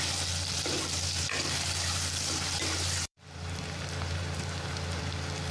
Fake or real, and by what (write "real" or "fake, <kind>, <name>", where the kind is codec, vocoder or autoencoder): fake, vocoder, BigVGAN v2